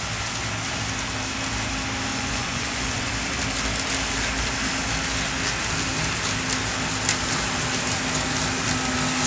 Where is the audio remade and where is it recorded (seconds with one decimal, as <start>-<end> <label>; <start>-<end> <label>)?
0.0-2.1 recorded; 2.1-3.1 remade; 3.1-9.3 recorded